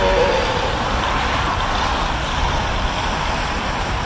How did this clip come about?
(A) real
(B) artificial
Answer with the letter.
A